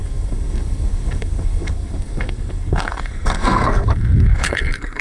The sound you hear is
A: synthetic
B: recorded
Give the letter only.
A